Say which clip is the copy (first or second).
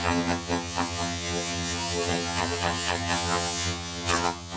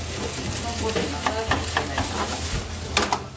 first